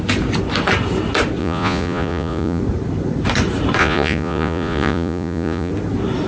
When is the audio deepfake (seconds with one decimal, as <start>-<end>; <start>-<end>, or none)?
1.4-2.6; 3.8-5.7